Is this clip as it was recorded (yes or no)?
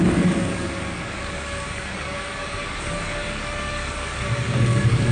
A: no